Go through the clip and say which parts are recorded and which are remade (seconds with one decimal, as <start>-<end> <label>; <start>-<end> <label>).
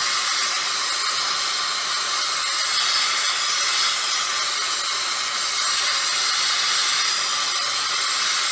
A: 0.0-8.5 recorded